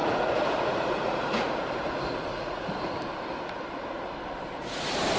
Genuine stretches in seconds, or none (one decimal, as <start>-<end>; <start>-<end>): 1.7-2.3; 2.8-5.2

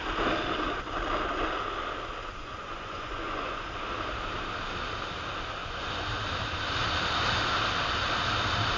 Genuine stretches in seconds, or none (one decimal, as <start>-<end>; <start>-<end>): 0.0-2.4; 3.7-5.6; 6.1-8.8